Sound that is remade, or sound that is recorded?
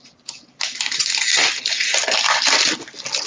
recorded